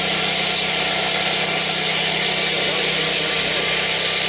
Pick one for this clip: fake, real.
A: real